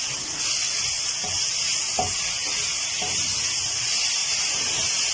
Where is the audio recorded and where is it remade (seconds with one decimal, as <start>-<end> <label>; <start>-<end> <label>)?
0.0-4.2 recorded; 4.2-5.1 remade